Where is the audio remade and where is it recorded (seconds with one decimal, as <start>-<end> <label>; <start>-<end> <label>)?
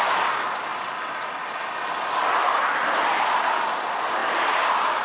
0.0-5.0 recorded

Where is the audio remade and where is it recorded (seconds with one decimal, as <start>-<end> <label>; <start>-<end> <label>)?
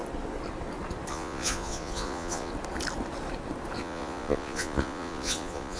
0.0-1.1 recorded; 1.1-2.5 remade; 2.5-3.8 recorded; 3.8-5.8 remade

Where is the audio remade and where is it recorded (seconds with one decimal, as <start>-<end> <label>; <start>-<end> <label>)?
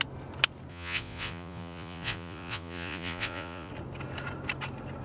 0.0-0.7 recorded; 0.7-3.7 remade; 3.7-5.0 recorded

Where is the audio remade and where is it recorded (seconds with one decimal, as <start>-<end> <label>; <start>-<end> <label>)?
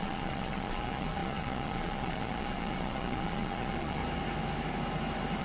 0.0-4.0 remade; 4.0-5.4 recorded